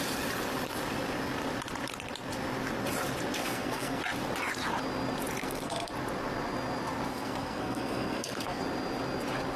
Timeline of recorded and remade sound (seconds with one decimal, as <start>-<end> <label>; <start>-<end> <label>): 0.0-3.4 recorded; 3.4-4.0 remade; 4.0-5.4 recorded; 5.4-5.9 remade; 5.9-7.1 recorded; 7.1-8.6 remade; 8.6-9.6 recorded